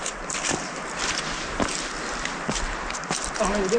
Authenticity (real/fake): real